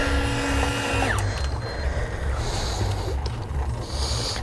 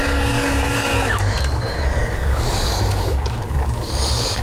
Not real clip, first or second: second